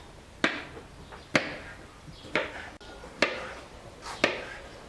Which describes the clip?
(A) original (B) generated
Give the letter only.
A